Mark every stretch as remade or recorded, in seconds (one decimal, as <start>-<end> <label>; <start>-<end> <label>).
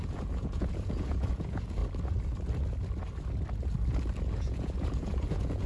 0.0-1.8 remade; 1.8-4.3 recorded; 4.3-5.7 remade